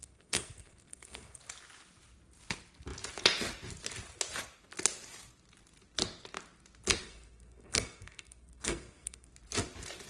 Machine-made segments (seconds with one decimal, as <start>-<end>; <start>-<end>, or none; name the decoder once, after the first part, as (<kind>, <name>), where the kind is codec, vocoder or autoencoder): 0.0-1.4 (codec, SNAC); 7.0-9.3